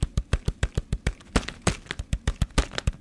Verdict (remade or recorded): remade